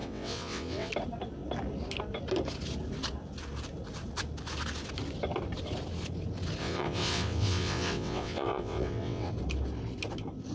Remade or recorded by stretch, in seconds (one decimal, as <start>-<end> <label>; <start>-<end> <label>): 0.0-0.9 remade; 0.9-6.6 recorded; 6.6-9.3 remade; 9.3-10.5 recorded